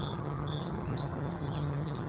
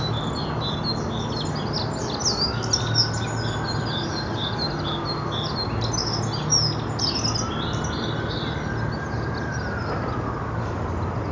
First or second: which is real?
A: second